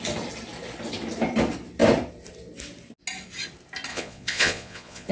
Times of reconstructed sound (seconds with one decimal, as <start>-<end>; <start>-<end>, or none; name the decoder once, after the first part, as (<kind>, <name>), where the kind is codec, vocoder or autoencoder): 3.9-5.1 (vocoder, Vocos)